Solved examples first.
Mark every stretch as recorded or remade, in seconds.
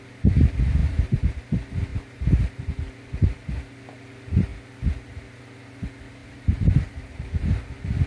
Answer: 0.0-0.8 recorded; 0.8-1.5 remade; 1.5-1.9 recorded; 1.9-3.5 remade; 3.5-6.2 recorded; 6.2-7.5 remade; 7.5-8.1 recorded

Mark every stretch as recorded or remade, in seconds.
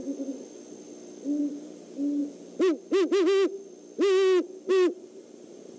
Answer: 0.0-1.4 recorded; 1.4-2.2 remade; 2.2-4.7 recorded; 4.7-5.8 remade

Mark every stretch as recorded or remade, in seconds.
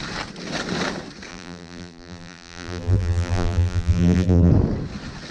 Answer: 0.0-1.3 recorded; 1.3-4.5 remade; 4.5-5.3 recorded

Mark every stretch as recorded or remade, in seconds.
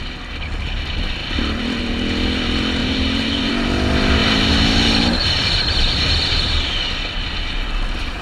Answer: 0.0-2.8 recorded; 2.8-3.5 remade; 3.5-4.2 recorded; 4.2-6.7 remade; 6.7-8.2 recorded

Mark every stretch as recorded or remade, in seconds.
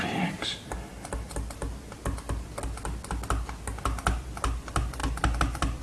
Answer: 0.0-0.9 remade; 0.9-4.4 recorded; 4.4-5.0 remade; 5.0-5.8 recorded